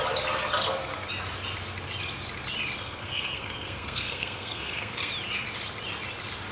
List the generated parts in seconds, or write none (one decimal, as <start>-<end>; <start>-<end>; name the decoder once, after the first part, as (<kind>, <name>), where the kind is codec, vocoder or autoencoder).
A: 2.8-5.1 (codec, SNAC)